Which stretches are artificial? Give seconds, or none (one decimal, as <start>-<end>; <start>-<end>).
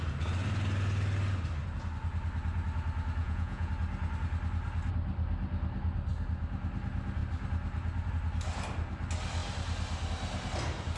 3.2-3.7